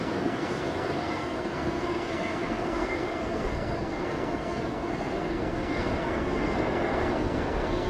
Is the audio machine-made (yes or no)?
yes